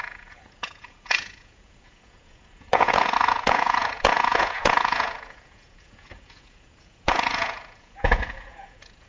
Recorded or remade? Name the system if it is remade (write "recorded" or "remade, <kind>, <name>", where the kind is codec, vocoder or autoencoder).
remade, vocoder, Vocos